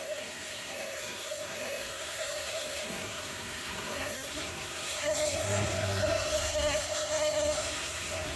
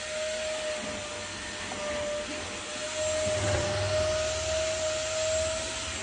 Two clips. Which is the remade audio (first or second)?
first